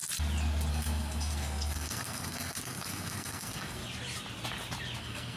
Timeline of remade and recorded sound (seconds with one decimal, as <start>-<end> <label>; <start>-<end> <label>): 0.0-0.7 recorded; 0.7-3.8 remade; 3.8-5.0 recorded; 5.0-5.4 remade